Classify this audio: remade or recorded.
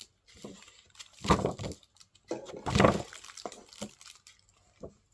recorded